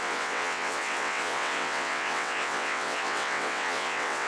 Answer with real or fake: fake